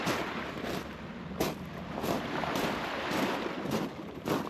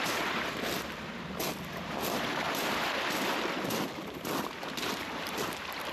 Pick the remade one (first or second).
second